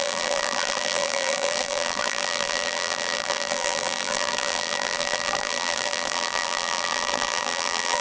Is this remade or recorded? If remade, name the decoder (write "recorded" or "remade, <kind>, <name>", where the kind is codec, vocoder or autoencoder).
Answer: remade, vocoder, BigVGAN v2